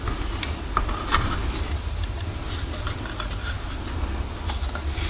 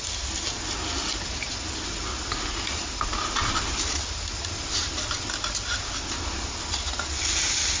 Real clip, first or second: first